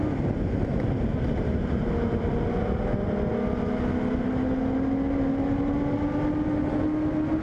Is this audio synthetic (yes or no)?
no